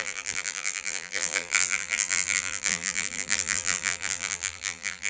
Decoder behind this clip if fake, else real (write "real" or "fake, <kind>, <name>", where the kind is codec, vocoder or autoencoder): fake, vocoder, BigVGAN v2